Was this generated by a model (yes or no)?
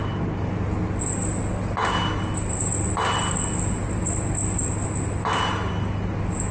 no